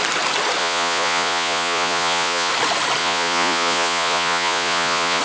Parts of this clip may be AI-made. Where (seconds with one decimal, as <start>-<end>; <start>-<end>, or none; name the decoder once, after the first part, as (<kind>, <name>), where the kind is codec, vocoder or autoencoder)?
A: 0.6-2.5 (vocoder, Vocos); 3.0-5.2